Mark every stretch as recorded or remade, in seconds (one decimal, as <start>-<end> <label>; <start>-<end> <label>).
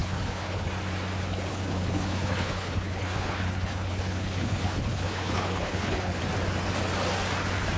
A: 0.0-0.7 remade; 0.7-1.5 recorded; 1.5-6.2 remade; 6.2-7.8 recorded